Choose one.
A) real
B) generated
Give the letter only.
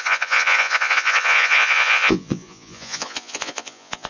B